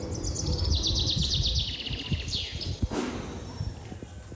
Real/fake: real